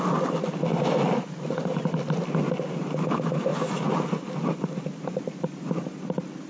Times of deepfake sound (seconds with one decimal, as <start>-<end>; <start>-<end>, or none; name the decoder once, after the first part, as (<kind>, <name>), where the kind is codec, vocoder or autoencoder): none